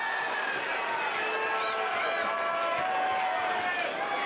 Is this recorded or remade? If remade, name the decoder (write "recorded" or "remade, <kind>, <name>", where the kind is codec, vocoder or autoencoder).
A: recorded